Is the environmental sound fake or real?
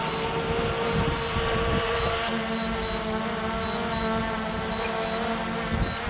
real